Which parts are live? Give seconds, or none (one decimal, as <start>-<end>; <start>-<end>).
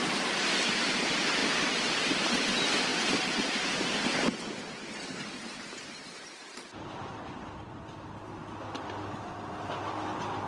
0.0-1.4; 2.4-2.9; 7.3-10.5